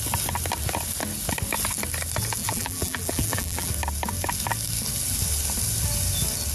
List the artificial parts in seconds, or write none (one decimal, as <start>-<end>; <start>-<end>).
2.4-3.7